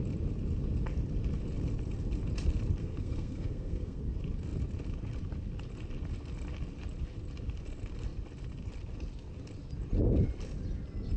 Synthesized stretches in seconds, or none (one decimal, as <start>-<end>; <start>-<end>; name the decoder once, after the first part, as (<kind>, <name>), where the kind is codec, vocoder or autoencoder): 2.8-4.0 (codec, SNAC)